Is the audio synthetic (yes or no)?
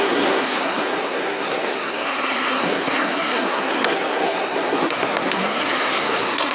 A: yes